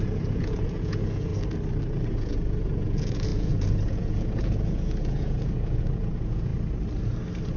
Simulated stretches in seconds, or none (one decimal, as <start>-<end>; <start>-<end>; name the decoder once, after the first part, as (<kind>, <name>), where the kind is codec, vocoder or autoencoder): 0.0-1.3 (vocoder, Vocos); 2.1-6.5